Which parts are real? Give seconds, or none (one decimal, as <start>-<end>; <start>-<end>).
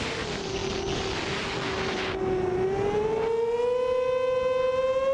0.0-5.1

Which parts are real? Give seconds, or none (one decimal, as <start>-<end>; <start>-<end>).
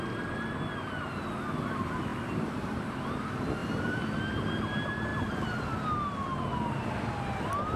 0.0-2.1; 3.1-3.6; 4.2-7.8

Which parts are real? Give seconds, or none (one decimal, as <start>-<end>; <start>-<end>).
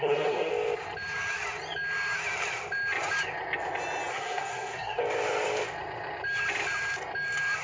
0.5-4.1; 5.0-7.6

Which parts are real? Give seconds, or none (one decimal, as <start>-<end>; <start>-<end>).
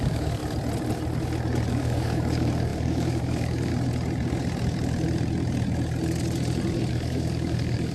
0.4-1.7; 3.7-6.9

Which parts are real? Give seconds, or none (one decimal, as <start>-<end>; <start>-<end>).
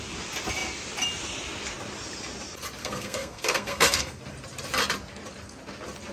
0.0-2.8; 4.2-6.1